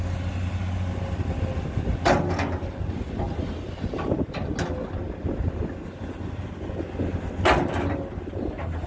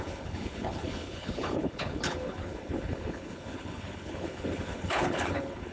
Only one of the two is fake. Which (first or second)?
second